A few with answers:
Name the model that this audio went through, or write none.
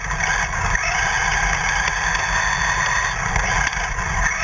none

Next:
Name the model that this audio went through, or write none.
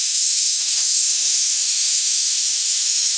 autoencoder, DAC-VAE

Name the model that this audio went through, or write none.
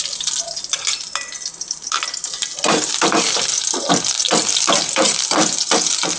none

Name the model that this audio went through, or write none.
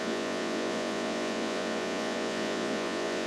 vocoder, Vocos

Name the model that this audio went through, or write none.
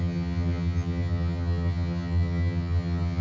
vocoder, HiFi-GAN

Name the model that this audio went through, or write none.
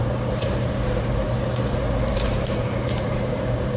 vocoder, BigVGAN v2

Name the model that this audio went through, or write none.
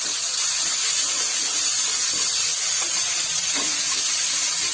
vocoder, Vocos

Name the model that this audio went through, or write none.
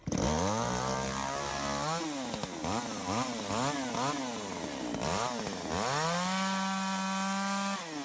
none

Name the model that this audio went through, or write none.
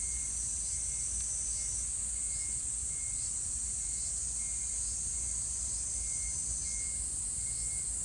none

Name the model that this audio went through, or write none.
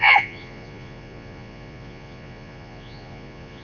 vocoder, Vocos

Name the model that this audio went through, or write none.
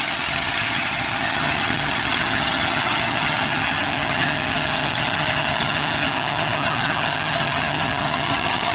vocoder, HiFi-GAN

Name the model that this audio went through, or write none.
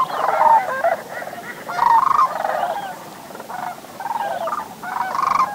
none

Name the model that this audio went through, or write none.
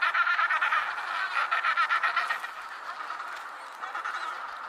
none